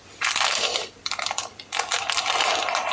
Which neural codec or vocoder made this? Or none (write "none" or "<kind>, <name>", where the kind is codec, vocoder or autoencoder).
vocoder, BigVGAN v2